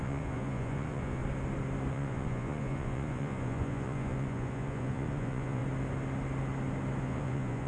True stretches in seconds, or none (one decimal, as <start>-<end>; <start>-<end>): 1.2-1.9; 5.6-7.0